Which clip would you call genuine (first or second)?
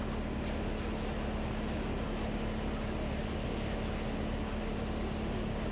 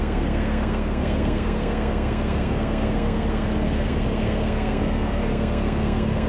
first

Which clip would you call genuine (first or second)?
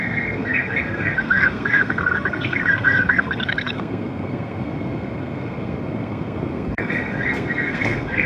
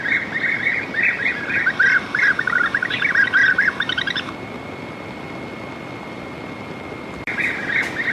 second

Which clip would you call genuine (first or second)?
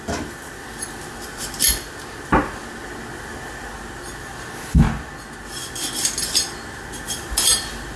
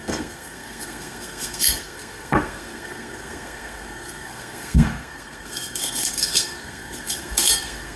first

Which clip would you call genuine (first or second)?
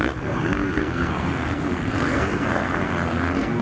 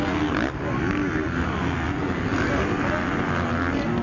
second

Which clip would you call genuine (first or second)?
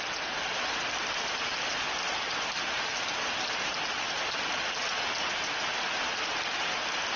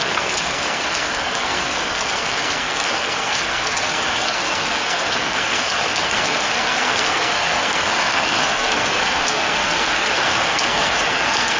first